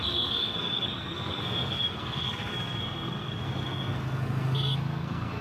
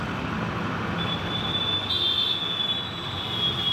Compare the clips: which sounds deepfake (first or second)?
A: first